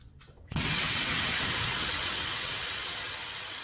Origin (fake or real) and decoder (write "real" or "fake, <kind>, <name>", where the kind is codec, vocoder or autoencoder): fake, vocoder, WaveNeXt